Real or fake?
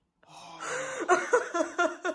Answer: real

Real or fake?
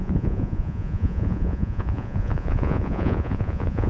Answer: fake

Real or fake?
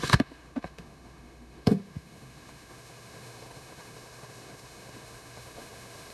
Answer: fake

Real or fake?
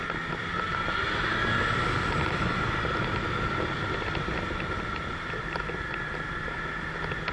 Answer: real